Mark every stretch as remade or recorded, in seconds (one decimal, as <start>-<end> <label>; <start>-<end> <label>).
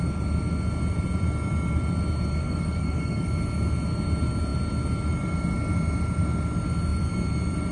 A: 0.0-2.4 recorded; 2.4-3.3 remade; 3.3-7.7 recorded